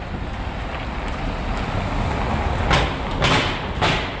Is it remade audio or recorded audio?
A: recorded